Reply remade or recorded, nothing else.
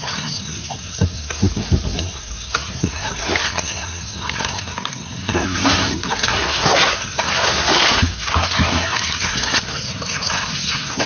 remade